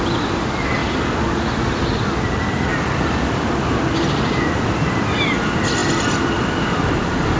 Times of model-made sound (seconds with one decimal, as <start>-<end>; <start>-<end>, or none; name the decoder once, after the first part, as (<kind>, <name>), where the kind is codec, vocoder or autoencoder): 2.7-3.5 (vocoder, BigVGAN v2)